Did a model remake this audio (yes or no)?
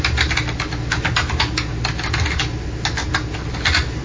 no